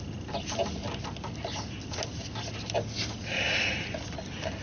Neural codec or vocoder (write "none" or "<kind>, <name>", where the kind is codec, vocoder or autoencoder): none